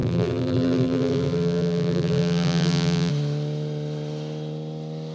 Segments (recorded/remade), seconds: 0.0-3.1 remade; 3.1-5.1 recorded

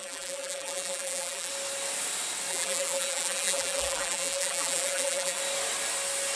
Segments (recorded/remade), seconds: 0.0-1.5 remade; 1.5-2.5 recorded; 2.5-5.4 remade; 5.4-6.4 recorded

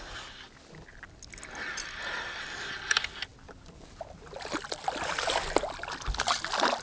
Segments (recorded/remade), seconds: 0.0-6.8 recorded